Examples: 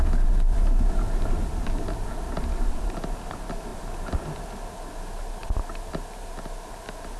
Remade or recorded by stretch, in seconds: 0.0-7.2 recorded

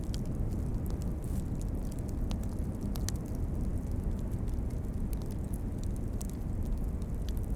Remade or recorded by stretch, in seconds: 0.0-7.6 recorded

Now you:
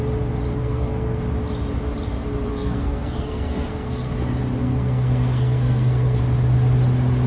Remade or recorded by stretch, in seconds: 0.0-0.5 recorded; 0.5-1.2 remade; 1.2-2.5 recorded; 2.5-4.1 remade; 4.1-4.6 recorded; 4.6-6.2 remade; 6.2-7.3 recorded

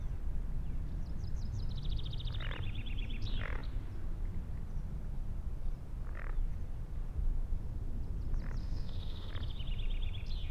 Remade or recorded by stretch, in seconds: 0.0-8.6 recorded; 8.6-9.3 remade; 9.3-10.5 recorded

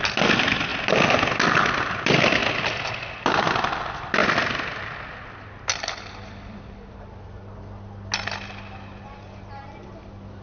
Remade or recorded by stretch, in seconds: 0.0-10.4 recorded

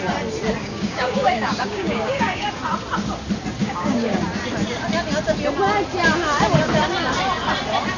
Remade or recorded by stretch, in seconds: 0.0-0.6 recorded; 0.6-2.5 remade; 2.5-3.6 recorded; 3.6-4.2 remade; 4.2-8.0 recorded